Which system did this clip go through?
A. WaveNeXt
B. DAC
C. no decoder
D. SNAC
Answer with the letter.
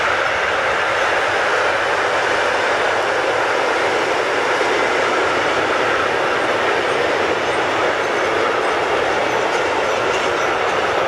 C